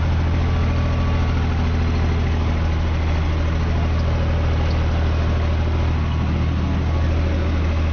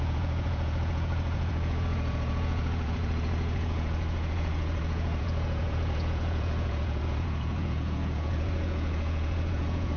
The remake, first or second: second